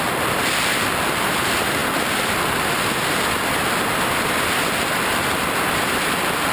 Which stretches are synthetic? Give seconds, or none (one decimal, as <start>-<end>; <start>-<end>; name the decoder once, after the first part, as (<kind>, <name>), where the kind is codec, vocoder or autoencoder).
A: 0.0-6.5 (vocoder, BigVGAN v2)